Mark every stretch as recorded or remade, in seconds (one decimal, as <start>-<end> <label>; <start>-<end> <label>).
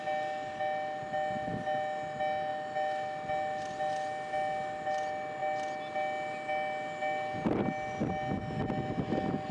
0.0-9.5 recorded